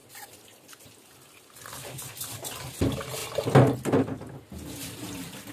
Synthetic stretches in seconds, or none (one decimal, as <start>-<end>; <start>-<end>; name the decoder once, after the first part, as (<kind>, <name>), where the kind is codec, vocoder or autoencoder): none